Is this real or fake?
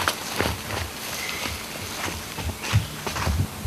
real